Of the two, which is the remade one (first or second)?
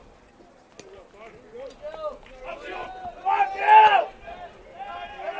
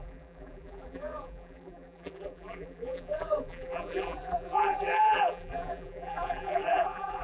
second